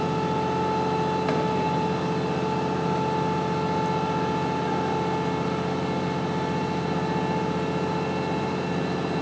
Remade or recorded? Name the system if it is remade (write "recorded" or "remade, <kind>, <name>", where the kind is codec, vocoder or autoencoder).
recorded